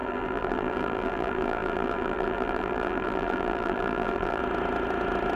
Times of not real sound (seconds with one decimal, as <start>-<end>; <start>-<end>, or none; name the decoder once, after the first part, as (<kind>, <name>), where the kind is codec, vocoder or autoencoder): 0.0-4.4 (vocoder, BigVGAN v2)